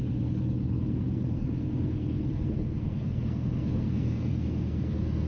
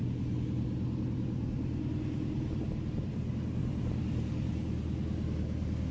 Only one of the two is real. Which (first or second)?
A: second